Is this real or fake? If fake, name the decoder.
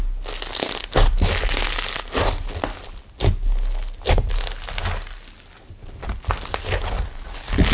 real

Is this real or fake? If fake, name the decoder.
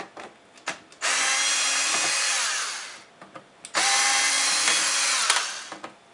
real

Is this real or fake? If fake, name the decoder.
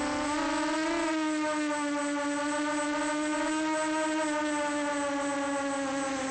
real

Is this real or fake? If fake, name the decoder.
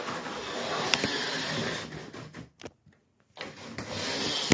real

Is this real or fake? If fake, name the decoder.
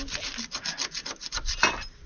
real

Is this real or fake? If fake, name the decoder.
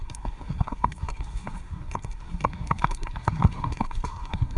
fake, codec, SNAC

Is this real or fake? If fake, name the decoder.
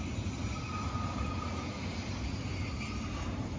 real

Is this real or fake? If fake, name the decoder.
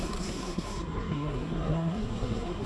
fake, codec, SNAC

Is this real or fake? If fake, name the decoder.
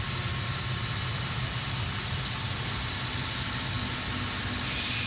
real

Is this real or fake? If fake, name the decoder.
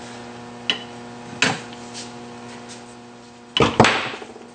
real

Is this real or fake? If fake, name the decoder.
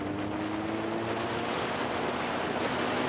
real